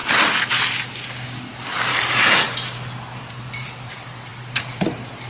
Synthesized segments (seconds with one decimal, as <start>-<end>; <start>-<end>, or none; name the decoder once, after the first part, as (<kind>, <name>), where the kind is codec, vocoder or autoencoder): none